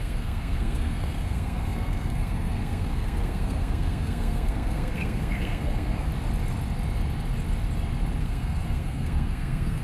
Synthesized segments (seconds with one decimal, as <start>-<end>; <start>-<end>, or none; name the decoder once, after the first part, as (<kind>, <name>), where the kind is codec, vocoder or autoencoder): 0.0-6.1 (codec, SNAC); 8.2-9.8